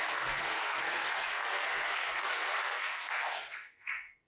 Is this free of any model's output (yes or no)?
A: no